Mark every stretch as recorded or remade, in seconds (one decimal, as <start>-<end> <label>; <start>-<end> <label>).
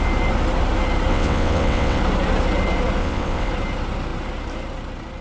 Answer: 0.0-1.1 recorded; 1.1-2.0 remade; 2.0-3.0 recorded; 3.0-3.5 remade; 3.5-5.2 recorded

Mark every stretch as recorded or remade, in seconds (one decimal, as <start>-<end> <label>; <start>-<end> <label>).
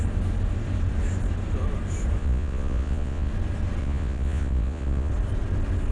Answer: 0.0-2.2 recorded; 2.2-3.3 remade; 3.3-3.8 recorded; 3.8-5.1 remade; 5.1-5.9 recorded